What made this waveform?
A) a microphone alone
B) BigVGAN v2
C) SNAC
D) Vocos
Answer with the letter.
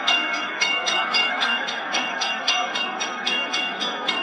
C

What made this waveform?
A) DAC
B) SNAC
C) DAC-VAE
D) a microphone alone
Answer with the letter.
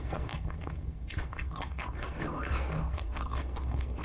B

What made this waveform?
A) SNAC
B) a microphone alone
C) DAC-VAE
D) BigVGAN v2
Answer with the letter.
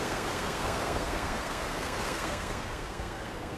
A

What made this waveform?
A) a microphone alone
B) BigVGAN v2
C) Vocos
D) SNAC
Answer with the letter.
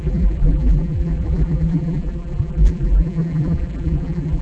B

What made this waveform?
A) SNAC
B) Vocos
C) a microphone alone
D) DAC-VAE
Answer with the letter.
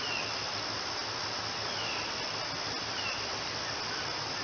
C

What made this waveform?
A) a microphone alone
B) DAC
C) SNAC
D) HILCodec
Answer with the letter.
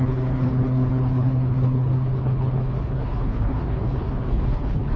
D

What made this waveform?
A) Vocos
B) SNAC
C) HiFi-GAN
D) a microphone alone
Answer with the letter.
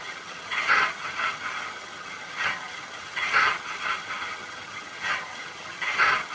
C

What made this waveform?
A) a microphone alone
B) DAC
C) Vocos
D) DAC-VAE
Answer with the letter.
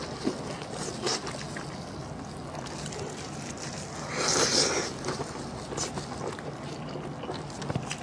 A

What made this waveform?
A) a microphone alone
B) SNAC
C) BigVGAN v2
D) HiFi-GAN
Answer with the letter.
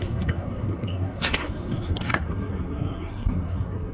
B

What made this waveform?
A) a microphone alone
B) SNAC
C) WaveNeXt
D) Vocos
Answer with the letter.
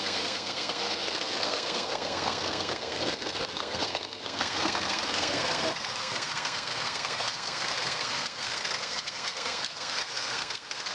B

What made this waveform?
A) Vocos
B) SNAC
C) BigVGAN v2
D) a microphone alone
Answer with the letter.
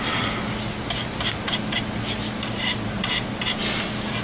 D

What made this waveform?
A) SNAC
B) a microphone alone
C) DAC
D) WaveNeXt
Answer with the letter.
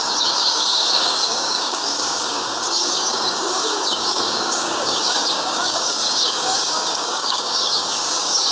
C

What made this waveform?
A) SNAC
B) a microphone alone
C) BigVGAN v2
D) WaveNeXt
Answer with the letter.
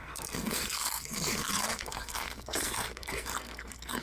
A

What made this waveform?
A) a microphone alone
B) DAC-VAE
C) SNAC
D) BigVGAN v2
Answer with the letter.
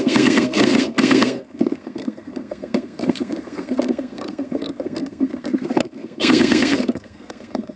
C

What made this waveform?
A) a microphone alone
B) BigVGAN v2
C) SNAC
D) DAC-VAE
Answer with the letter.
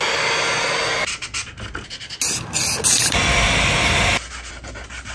A